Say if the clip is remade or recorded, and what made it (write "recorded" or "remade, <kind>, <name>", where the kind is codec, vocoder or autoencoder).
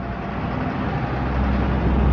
recorded